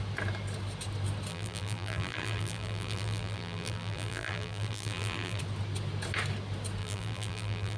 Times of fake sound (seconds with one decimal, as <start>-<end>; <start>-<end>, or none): 1.3-5.4; 6.8-7.8